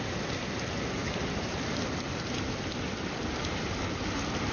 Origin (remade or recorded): recorded